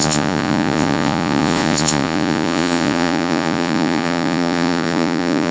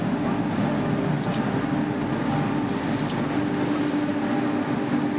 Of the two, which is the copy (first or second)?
first